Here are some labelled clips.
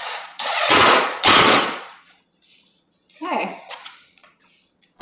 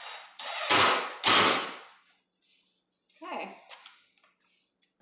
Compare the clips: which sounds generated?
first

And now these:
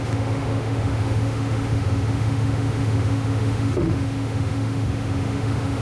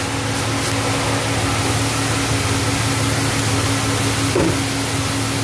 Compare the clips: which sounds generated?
first